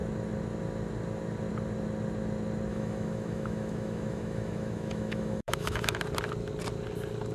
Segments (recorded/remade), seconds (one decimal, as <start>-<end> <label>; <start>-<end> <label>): 0.0-2.7 recorded; 2.7-6.0 remade; 6.0-7.3 recorded